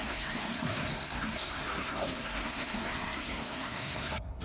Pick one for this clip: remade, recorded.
remade